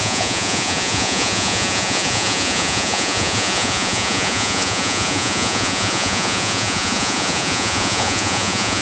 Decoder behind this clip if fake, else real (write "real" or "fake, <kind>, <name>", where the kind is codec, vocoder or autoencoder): fake, vocoder, Vocos